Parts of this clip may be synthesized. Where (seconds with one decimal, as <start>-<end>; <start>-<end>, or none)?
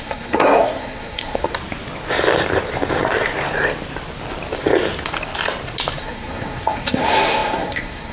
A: 0.0-1.5; 6.0-8.1